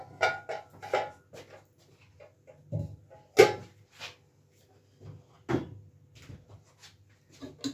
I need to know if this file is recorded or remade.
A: recorded